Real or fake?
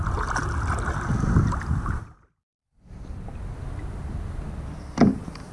real